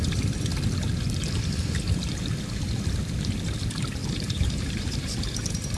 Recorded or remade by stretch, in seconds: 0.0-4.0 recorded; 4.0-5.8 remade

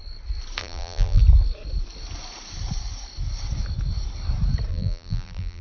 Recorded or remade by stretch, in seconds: 0.0-0.6 recorded; 0.6-1.2 remade; 1.2-4.7 recorded; 4.7-5.6 remade

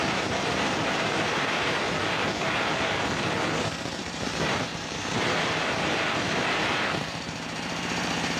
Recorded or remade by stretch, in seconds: 0.0-1.8 remade; 1.8-4.0 recorded; 4.0-8.4 remade

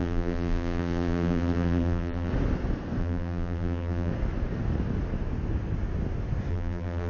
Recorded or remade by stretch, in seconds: 0.0-2.3 remade; 2.3-3.0 recorded; 3.0-4.1 remade; 4.1-6.5 recorded; 6.5-7.1 remade

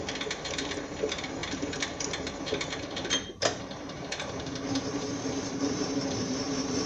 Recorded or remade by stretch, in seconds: 0.0-6.9 remade

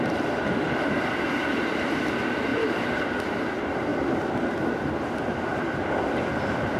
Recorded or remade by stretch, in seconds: 0.0-6.8 remade

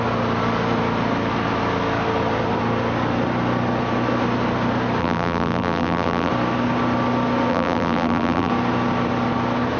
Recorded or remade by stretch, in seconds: 0.0-5.0 recorded; 5.0-6.3 remade; 6.3-7.5 recorded; 7.5-8.5 remade; 8.5-9.8 recorded